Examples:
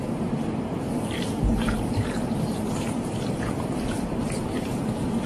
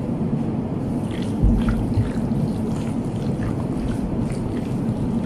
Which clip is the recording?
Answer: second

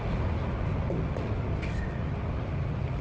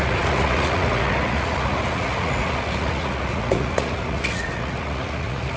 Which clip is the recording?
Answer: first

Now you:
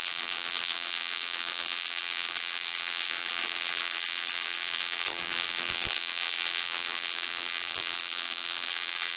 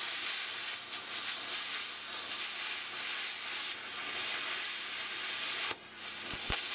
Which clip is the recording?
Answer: second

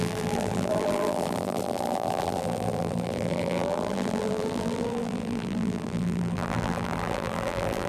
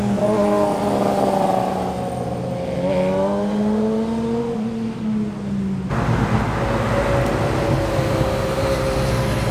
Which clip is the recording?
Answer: second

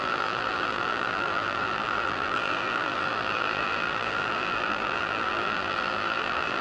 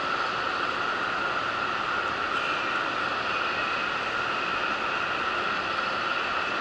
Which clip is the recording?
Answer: second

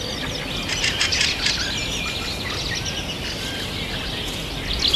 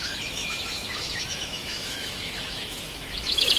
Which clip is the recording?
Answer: first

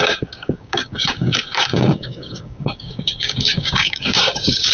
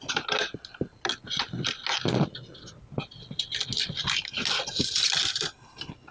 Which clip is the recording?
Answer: second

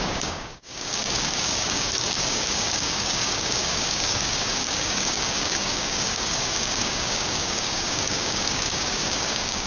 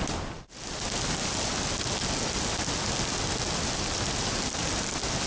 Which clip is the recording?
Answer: second